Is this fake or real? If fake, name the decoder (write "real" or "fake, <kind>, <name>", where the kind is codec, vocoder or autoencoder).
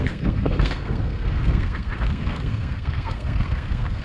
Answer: fake, codec, SNAC